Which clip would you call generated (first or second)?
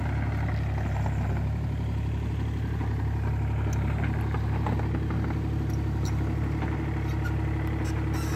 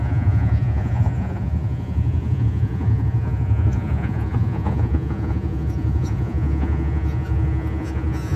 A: second